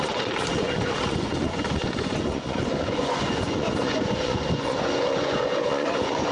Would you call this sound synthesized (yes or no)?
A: yes